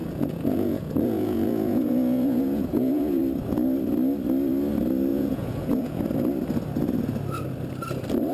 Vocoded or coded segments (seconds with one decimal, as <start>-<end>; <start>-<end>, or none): 0.0-3.2; 5.1-6.0